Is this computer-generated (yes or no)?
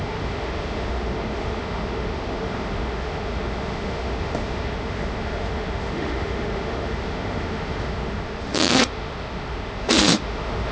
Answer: yes